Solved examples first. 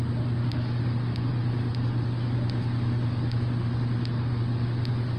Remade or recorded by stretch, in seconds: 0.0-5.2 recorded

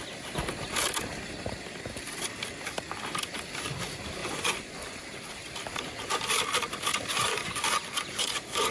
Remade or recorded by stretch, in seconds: 0.0-4.2 recorded; 4.2-5.0 remade; 5.0-7.1 recorded; 7.1-8.7 remade